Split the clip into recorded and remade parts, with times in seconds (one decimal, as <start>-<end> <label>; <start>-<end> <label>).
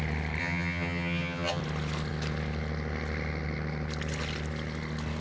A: 0.0-0.4 recorded; 0.4-1.6 remade; 1.6-5.2 recorded